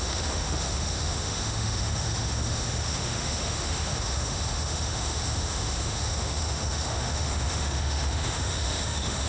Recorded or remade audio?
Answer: remade